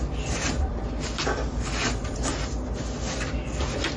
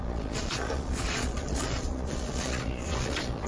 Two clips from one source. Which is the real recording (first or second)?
first